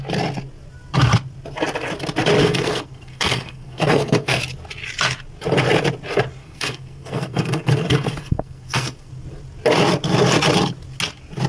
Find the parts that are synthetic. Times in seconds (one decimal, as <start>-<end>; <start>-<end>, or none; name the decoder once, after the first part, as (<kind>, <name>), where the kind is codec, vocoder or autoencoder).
2.4-4.4 (codec, SNAC); 6.4-9.1